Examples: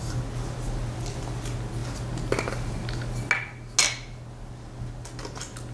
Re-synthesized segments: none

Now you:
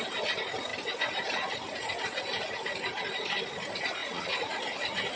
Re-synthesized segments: 4.0-4.6